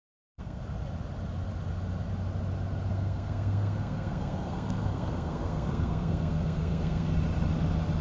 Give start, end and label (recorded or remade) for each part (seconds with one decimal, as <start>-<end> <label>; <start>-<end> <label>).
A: 0.0-0.6 remade; 0.6-2.9 recorded; 2.9-7.1 remade; 7.1-8.0 recorded